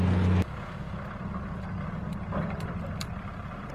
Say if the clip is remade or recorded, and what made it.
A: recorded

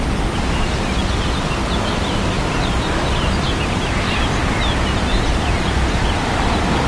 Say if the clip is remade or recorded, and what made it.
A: remade, vocoder, BigVGAN v2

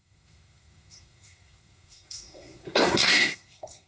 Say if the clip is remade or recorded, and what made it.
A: remade, codec, SNAC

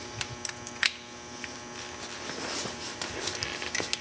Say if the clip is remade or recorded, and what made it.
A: recorded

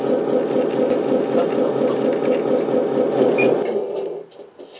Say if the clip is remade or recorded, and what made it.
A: recorded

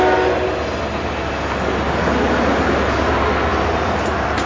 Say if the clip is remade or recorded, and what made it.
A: recorded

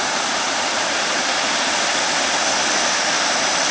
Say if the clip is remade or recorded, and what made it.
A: remade, vocoder, BigVGAN v2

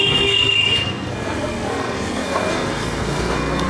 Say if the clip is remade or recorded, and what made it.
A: remade, codec, SNAC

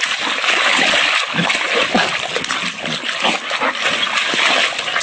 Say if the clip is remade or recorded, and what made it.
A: recorded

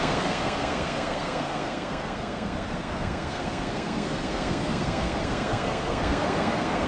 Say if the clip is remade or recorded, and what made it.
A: remade, codec, SNAC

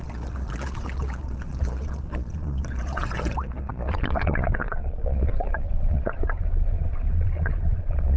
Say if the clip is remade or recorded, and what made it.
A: remade, vocoder, Vocos